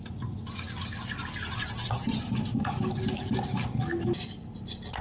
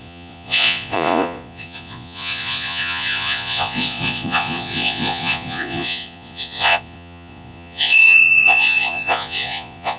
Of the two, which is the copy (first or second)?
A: second